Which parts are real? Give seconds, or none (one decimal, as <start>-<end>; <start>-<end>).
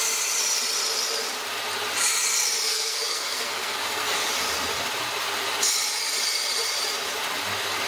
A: 0.0-2.7; 4.2-7.9